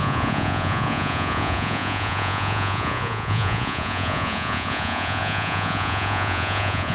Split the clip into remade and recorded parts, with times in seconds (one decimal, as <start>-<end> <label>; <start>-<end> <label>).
0.0-6.9 remade